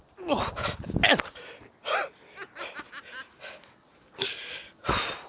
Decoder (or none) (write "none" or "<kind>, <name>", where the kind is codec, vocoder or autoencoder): none